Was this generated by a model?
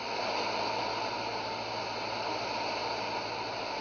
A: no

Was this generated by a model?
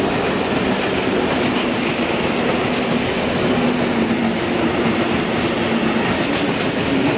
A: no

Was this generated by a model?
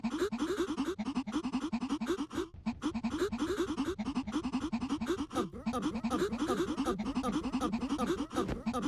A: no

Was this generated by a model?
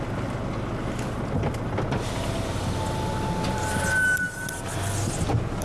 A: no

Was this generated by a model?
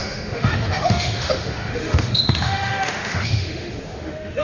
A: yes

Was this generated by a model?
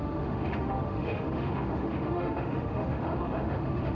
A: yes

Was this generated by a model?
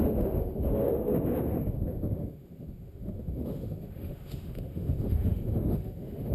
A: yes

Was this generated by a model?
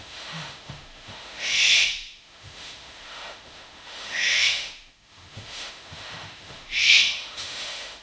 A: yes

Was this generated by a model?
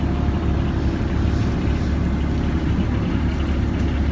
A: no